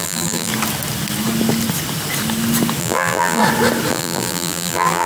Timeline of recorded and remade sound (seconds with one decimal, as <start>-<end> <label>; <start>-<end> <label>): 0.0-0.5 remade; 0.5-2.8 recorded; 2.8-3.4 remade; 3.4-3.9 recorded; 3.9-5.1 remade